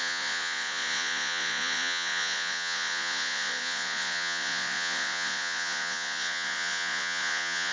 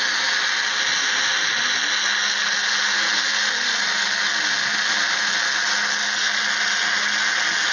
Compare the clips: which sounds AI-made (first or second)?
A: first